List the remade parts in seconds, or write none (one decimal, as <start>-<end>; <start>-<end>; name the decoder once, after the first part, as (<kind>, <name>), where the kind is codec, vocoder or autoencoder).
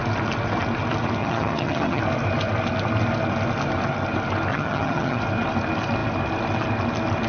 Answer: 1.2-2.0 (vocoder, HiFi-GAN); 4.5-5.2